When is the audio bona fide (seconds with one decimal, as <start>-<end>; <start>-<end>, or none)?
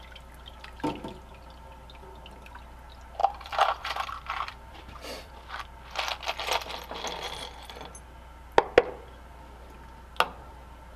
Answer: 0.0-3.2; 5.3-11.0